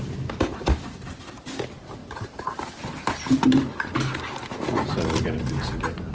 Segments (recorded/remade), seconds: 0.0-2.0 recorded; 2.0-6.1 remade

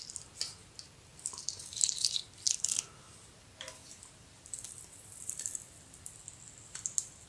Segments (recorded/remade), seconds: 0.0-1.1 recorded; 1.1-2.4 remade; 2.4-3.8 recorded; 3.8-6.0 remade; 6.0-7.3 recorded

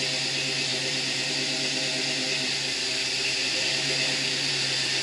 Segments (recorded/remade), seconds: 0.0-0.7 recorded; 0.7-1.3 remade; 1.3-3.4 recorded; 3.4-4.5 remade; 4.5-5.0 recorded

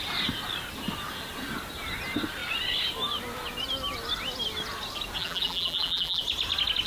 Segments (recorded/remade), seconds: 0.0-5.2 recorded; 5.2-6.2 remade; 6.2-6.9 recorded

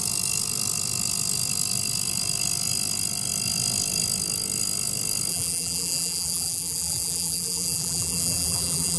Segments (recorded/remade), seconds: 0.0-5.3 recorded; 5.3-9.0 remade